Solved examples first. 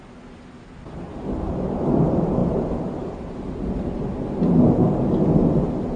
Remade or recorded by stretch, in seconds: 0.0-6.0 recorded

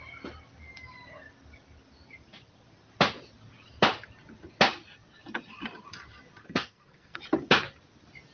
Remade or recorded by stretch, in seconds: 0.0-6.4 recorded; 6.4-7.2 remade; 7.2-8.3 recorded

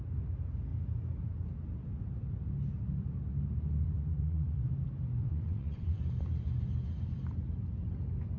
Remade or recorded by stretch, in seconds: 0.0-4.1 recorded; 4.1-4.6 remade; 4.6-5.2 recorded; 5.2-6.0 remade; 6.0-8.4 recorded

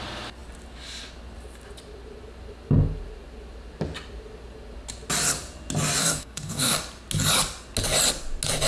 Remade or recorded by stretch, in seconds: 0.0-6.0 recorded; 6.0-6.8 remade; 6.8-8.7 recorded

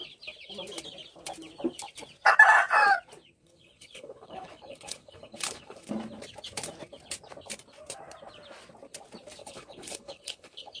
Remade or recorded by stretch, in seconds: 0.0-3.4 recorded; 3.4-5.9 remade; 5.9-9.4 recorded; 9.4-10.8 remade

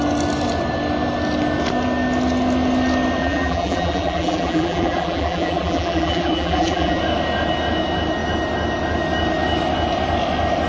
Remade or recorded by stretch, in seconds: 0.0-3.2 recorded; 3.2-7.0 remade; 7.0-10.7 recorded

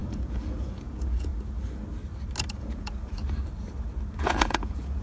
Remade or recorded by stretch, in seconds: 0.0-1.3 remade; 1.3-2.6 recorded; 2.6-3.2 remade; 3.2-4.2 recorded; 4.2-5.0 remade

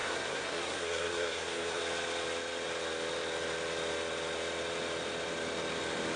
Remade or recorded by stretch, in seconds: 0.0-1.8 remade; 1.8-6.2 recorded